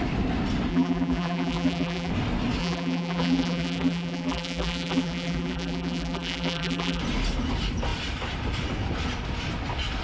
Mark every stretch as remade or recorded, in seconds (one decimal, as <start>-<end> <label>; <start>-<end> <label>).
0.0-0.7 recorded; 0.7-2.1 remade; 2.1-2.6 recorded; 2.6-7.0 remade; 7.0-10.0 recorded